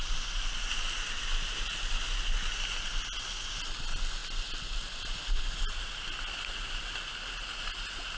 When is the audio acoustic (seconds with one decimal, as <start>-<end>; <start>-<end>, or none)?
0.0-8.2